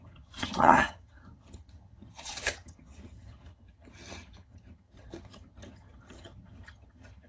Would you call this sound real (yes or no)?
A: no